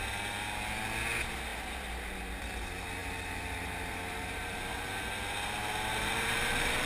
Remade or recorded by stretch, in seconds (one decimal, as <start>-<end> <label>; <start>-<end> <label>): 0.0-3.0 recorded; 3.0-4.6 remade; 4.6-5.9 recorded; 5.9-6.9 remade